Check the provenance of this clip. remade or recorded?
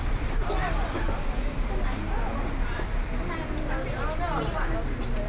recorded